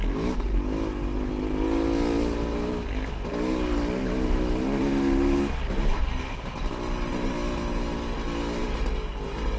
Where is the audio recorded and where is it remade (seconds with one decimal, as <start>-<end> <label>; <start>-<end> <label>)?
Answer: 0.0-9.6 recorded